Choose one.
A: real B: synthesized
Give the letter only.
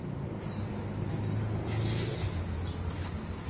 A